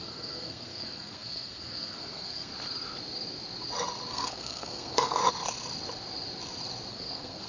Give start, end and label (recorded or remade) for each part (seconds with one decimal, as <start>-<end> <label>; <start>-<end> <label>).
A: 0.0-2.5 remade; 2.5-4.1 recorded; 4.1-5.2 remade; 5.2-6.9 recorded; 6.9-7.5 remade